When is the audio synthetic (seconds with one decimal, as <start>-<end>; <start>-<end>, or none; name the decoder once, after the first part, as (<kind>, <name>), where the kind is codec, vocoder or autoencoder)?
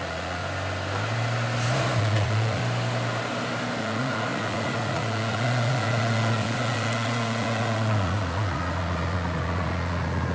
0.0-0.4 (vocoder, Vocos); 2.0-2.6; 3.8-10.3